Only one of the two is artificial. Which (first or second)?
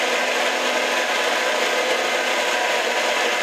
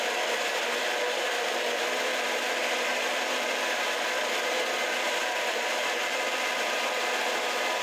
second